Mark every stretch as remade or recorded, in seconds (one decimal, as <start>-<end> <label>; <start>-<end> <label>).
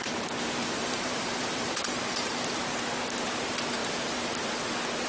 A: 0.0-2.3 remade; 2.3-3.8 recorded; 3.8-4.3 remade; 4.3-5.1 recorded